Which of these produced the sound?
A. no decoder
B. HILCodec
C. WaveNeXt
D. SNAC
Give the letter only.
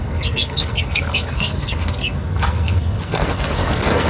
D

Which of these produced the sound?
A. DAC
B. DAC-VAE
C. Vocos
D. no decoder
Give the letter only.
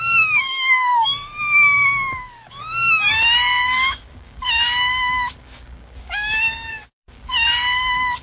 A